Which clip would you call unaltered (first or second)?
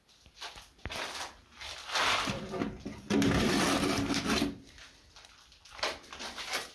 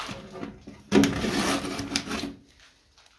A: second